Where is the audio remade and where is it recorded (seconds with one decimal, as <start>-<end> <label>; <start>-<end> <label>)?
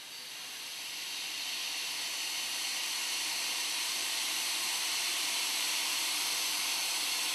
0.0-2.7 recorded; 2.7-7.3 remade